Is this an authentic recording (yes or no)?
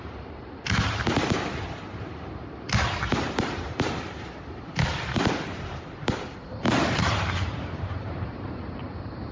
no